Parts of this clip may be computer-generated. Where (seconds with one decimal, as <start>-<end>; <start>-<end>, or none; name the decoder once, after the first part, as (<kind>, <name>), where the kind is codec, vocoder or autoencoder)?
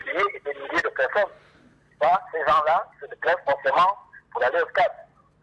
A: none